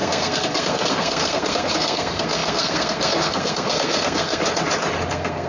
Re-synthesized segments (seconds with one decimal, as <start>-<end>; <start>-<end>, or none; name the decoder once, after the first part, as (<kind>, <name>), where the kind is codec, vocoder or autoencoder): 0.0-4.4 (codec, SNAC); 5.1-5.5